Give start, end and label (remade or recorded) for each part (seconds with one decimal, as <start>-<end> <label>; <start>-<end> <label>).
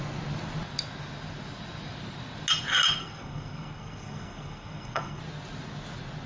0.0-3.0 recorded; 3.0-5.2 remade; 5.2-6.3 recorded